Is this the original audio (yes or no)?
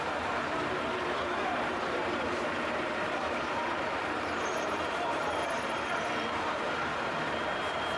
no